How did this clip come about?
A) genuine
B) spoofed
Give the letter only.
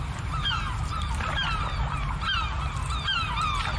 A